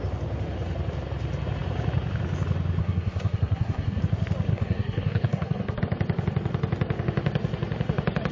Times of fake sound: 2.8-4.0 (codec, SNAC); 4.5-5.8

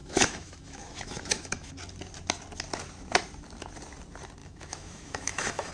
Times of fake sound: 0.0-1.7 (autoencoder, DAC-VAE); 4.4-5.7